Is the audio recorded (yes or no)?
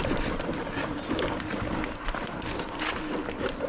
yes